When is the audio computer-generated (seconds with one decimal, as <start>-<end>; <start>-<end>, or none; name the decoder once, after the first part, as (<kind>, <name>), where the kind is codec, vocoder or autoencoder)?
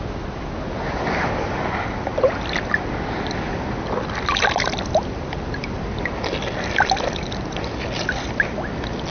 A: none